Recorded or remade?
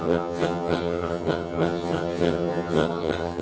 remade